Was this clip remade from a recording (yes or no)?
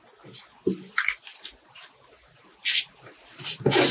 no